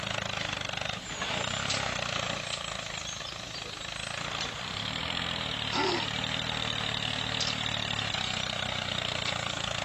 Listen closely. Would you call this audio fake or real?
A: real